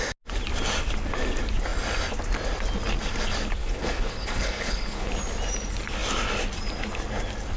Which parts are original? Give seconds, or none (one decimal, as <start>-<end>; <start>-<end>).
0.0-3.6; 5.1-7.6